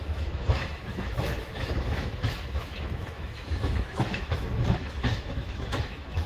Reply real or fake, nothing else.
fake